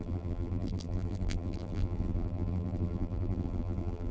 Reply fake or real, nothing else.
fake